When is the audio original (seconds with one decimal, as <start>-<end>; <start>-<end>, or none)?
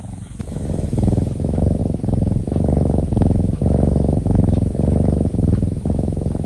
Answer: 1.8-2.4